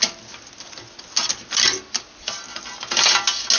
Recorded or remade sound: recorded